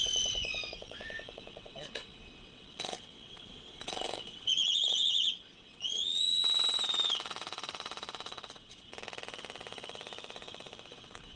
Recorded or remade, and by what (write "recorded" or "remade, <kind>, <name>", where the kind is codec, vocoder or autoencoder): remade, vocoder, WaveNeXt